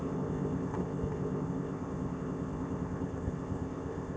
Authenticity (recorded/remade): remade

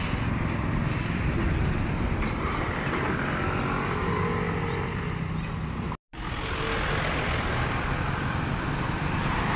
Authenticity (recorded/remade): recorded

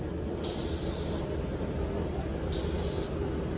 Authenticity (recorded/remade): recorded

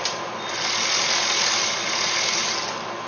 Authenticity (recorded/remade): recorded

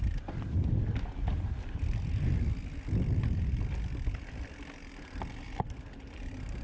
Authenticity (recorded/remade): recorded